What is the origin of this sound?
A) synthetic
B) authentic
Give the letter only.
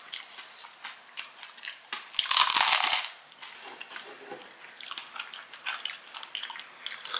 B